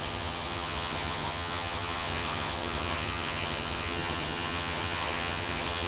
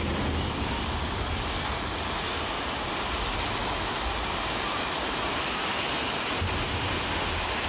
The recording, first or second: second